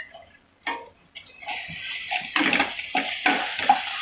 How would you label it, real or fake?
real